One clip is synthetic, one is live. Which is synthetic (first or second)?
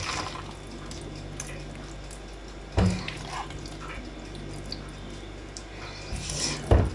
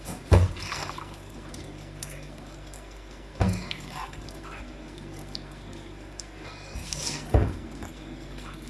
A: second